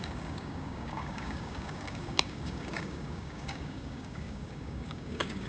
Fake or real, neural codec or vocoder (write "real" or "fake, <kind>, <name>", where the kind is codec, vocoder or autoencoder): fake, codec, DAC